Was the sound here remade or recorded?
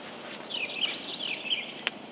recorded